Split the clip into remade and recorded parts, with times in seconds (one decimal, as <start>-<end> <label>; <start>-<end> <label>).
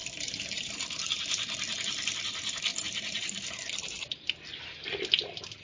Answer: 0.0-5.6 recorded